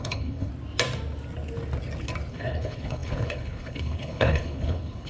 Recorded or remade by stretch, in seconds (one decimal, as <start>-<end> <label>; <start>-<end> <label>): 0.0-0.5 remade; 0.5-2.3 recorded; 2.3-5.1 remade